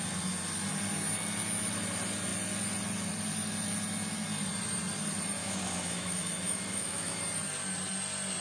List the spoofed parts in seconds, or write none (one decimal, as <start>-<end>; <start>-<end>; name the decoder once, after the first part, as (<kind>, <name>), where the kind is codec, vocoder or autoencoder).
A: 5.4-7.2 (autoencoder, DAC-VAE)